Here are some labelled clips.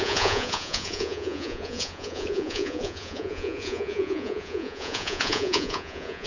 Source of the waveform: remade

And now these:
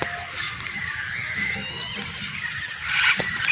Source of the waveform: recorded